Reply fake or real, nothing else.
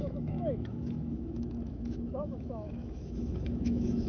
fake